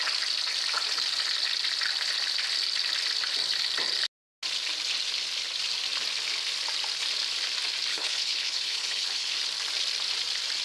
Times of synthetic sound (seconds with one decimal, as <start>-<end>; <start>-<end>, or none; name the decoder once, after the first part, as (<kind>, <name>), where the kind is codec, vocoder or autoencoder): 7.9-9.4 (codec, HILCodec)